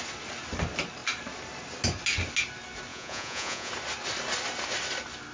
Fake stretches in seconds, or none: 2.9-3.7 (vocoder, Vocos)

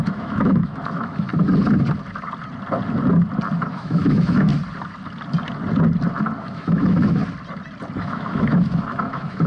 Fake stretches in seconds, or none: 0.0-1.3 (autoencoder, DAC-VAE); 3.7-4.5; 6.4-7.2; 8.0-9.5

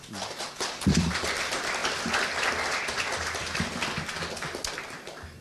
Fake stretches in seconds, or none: none

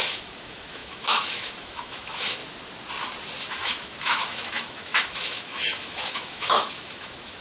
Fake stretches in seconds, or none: 0.0-2.4 (autoencoder, DAC-VAE); 3.4-7.4

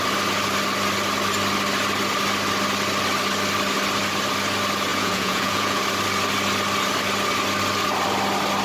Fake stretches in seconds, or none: 4.9-5.8 (vocoder, Vocos)

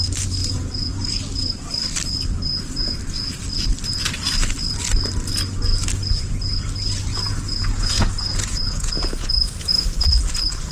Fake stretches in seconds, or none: 0.4-1.0 (vocoder, Vocos); 7.1-9.7